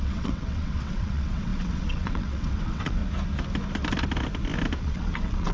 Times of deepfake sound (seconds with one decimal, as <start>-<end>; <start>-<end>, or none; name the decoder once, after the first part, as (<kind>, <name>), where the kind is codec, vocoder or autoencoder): 0.0-3.0 (vocoder, WaveNeXt); 4.8-5.5